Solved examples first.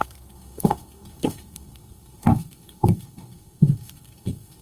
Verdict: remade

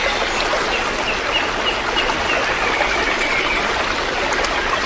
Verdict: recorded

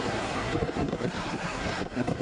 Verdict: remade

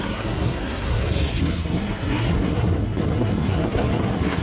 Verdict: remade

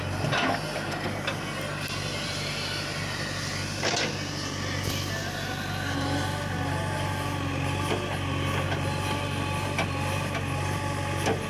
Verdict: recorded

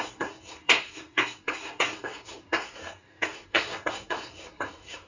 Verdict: remade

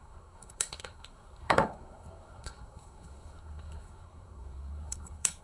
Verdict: remade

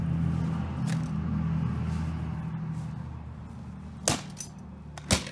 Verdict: recorded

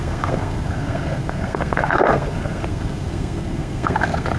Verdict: remade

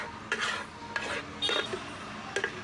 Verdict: recorded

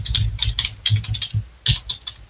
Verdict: recorded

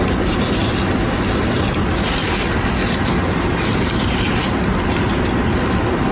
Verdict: recorded